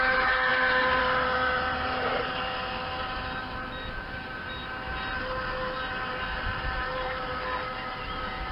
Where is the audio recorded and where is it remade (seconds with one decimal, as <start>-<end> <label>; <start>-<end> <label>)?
0.0-8.5 recorded